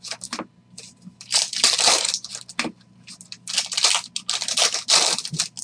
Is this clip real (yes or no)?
yes